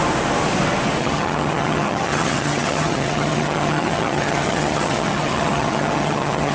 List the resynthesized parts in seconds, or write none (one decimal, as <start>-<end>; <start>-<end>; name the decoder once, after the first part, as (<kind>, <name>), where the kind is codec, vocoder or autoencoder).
1.0-6.5 (vocoder, HiFi-GAN)